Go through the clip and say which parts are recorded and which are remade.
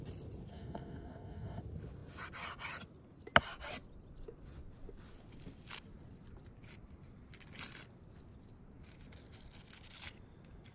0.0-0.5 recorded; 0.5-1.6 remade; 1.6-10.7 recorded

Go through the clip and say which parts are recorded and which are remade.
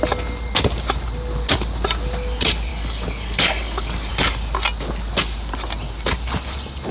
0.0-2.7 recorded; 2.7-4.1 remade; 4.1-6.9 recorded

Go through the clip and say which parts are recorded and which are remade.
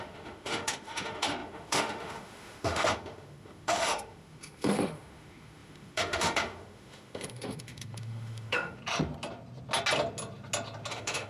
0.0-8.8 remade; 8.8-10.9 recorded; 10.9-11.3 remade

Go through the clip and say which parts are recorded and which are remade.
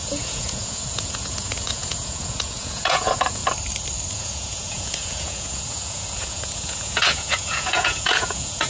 0.0-3.4 remade; 3.4-4.1 recorded; 4.1-8.7 remade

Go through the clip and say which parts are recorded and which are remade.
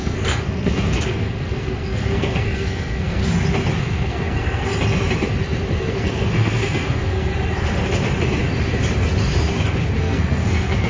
0.0-3.2 remade; 3.2-3.8 recorded; 3.8-4.7 remade; 4.7-5.9 recorded; 5.9-7.3 remade; 7.3-10.0 recorded; 10.0-10.9 remade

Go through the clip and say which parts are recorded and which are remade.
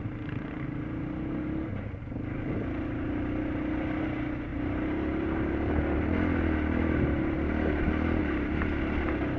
0.0-4.5 recorded; 4.5-5.7 remade; 5.7-8.2 recorded; 8.2-8.8 remade; 8.8-9.4 recorded